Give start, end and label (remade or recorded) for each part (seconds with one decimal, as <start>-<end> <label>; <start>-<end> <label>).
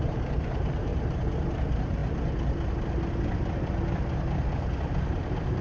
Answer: 0.0-0.9 remade; 0.9-1.5 recorded; 1.5-2.0 remade; 2.0-5.6 recorded